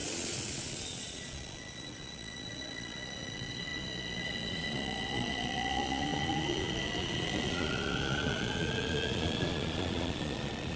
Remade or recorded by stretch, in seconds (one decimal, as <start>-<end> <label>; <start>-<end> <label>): 0.0-10.8 remade